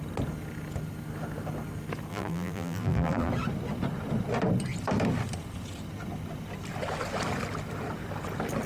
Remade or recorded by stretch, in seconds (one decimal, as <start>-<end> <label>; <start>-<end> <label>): 0.0-2.1 recorded; 2.1-3.3 remade; 3.3-8.7 recorded